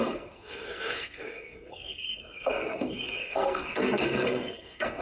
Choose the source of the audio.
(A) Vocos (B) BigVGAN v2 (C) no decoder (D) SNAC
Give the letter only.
D